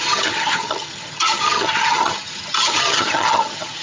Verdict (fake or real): fake